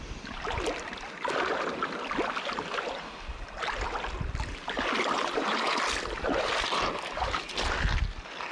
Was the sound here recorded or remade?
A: recorded